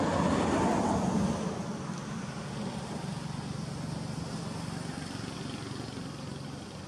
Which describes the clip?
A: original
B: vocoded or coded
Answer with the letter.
A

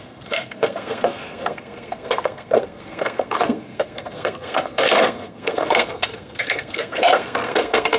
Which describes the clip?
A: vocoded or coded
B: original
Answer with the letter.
A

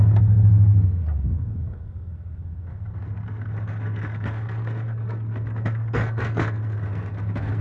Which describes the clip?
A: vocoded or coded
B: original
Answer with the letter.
A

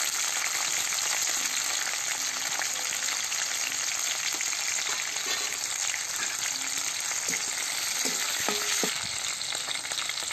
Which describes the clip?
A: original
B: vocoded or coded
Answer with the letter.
A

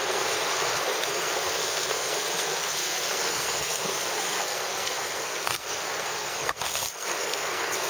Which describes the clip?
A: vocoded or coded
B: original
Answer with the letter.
A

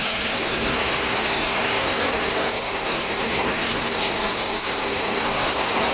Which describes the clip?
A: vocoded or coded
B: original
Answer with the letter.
A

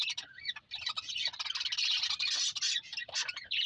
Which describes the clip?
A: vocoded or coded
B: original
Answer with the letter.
B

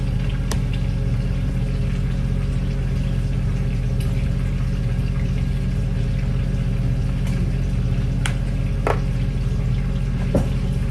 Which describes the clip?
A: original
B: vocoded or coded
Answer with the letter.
A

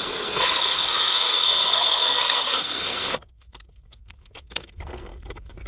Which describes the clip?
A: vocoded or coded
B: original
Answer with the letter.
A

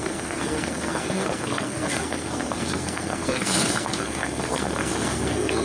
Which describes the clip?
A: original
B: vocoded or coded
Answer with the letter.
B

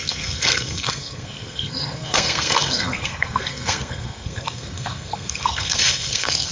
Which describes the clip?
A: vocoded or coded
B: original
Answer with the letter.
A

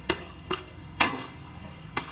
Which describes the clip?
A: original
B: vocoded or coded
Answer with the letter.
B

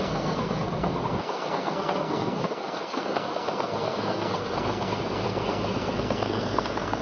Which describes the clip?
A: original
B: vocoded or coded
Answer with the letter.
B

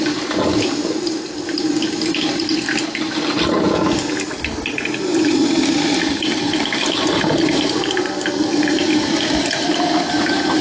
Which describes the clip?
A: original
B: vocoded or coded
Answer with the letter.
A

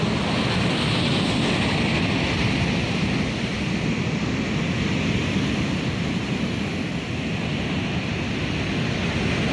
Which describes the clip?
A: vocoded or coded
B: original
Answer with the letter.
B